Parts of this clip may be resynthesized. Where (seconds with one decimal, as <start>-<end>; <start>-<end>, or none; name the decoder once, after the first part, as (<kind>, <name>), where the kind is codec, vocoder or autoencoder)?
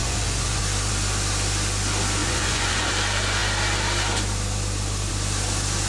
0.0-0.6 (vocoder, Vocos); 2.2-2.9